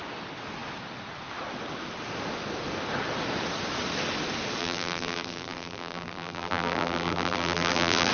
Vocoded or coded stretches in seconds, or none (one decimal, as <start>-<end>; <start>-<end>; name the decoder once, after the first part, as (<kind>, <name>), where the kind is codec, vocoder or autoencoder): 4.6-8.1 (vocoder, BigVGAN v2)